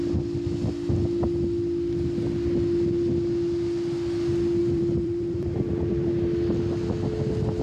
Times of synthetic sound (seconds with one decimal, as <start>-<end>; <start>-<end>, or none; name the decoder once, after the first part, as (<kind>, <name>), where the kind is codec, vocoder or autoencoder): 4.6-6.1 (vocoder, BigVGAN v2)